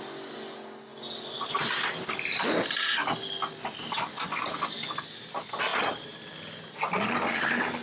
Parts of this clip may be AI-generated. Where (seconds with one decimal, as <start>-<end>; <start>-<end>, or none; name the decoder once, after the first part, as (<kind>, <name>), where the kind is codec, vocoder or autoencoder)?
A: none